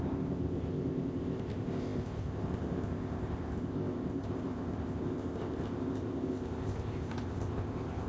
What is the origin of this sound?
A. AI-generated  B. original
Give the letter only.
A